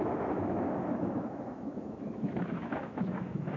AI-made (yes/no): yes